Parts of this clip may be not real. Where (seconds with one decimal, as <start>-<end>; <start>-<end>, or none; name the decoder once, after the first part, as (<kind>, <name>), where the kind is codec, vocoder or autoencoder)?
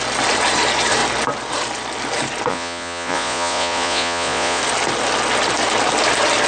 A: 2.5-4.6 (vocoder, Vocos)